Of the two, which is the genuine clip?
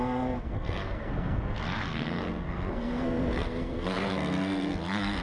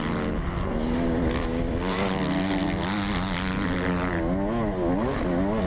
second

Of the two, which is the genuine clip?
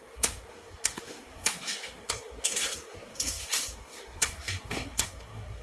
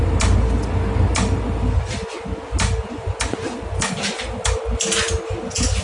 second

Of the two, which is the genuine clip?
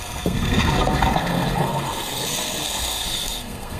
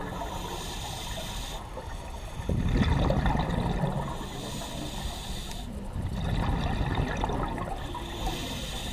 second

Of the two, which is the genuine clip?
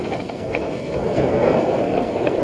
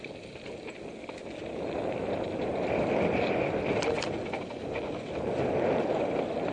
second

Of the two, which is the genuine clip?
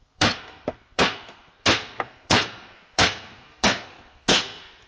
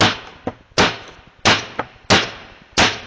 second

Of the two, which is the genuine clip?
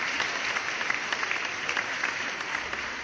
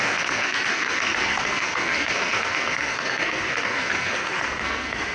first